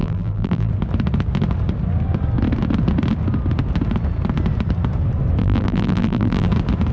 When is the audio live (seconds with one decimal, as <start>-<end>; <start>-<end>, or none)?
0.7-5.4; 6.5-6.9